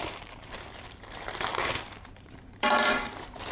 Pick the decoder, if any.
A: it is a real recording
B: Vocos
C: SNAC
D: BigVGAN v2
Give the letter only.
D